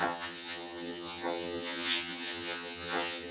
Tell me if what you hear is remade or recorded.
remade